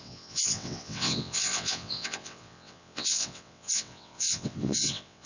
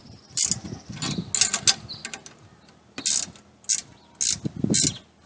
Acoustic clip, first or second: second